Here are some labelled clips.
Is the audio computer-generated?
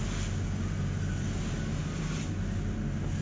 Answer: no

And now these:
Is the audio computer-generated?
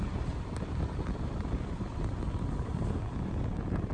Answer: yes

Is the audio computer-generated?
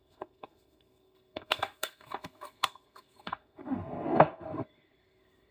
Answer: yes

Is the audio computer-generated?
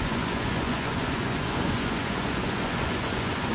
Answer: yes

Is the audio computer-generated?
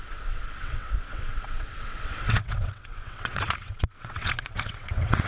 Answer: yes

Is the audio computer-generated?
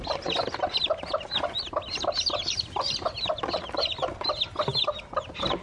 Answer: no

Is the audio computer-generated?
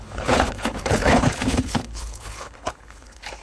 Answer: yes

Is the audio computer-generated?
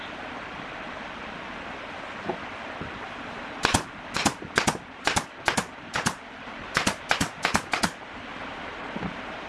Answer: yes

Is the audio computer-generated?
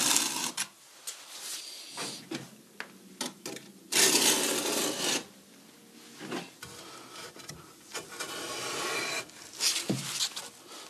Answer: no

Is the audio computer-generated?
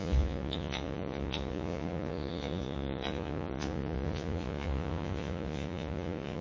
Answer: yes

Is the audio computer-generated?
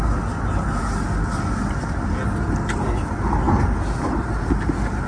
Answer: no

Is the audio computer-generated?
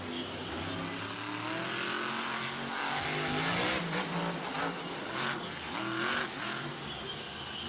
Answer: no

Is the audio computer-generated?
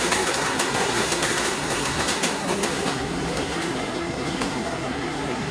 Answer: yes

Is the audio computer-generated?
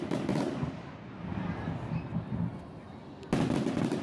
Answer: no